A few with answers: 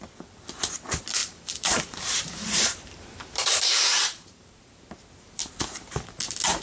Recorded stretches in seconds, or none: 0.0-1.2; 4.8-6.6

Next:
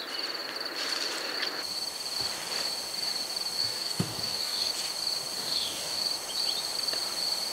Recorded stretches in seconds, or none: 0.0-3.6; 4.7-5.4; 6.0-7.5

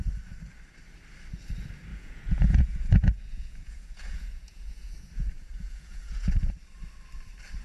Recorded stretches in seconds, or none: 0.0-1.9; 6.5-7.6